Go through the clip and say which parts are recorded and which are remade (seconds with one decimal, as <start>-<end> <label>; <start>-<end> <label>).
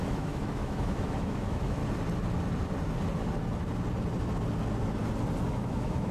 0.0-1.8 remade; 1.8-5.5 recorded; 5.5-6.1 remade